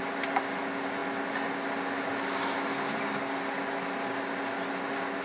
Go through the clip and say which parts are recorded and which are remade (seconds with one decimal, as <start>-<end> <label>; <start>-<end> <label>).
0.0-5.2 recorded